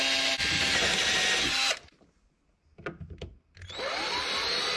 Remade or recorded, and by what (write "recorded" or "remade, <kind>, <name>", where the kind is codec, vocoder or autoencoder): recorded